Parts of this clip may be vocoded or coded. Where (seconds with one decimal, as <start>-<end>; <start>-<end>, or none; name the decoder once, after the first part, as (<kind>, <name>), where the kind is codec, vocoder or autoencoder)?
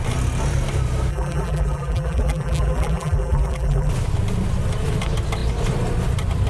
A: 1.1-3.9 (vocoder, BigVGAN v2)